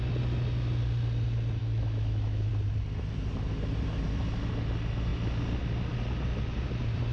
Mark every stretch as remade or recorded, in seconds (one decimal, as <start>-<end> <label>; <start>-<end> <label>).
0.0-1.6 recorded; 1.6-2.5 remade; 2.5-7.1 recorded